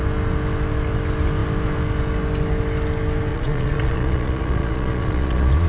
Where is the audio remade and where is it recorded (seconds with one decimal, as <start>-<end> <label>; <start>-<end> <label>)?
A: 0.0-3.3 recorded; 3.3-5.7 remade